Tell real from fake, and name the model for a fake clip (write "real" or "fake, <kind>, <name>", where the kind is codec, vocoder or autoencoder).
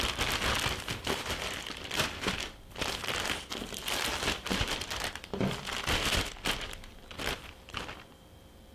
fake, vocoder, BigVGAN v2